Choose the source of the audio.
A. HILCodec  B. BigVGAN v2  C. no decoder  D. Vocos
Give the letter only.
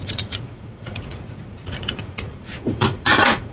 D